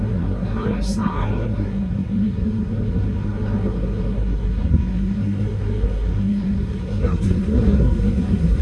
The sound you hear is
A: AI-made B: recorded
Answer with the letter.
A